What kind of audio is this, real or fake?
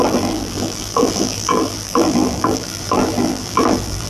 fake